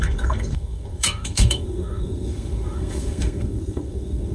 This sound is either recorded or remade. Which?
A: remade